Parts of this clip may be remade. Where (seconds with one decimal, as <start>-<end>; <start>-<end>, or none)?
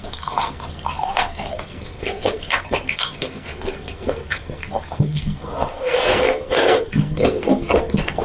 0.0-8.2